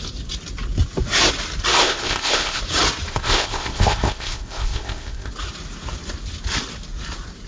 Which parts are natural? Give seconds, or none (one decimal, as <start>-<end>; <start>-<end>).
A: 0.0-1.8; 2.6-3.1; 5.3-7.5